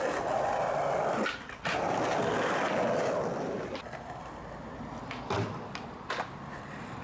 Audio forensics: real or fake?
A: real